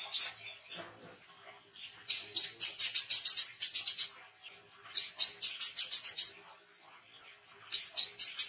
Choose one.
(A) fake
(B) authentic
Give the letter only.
B